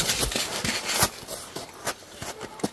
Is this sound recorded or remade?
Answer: recorded